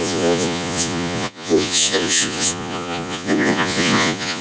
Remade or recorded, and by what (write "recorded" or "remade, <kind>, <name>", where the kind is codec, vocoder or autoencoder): remade, vocoder, Vocos